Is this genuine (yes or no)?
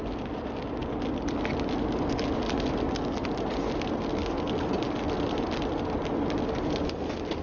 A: yes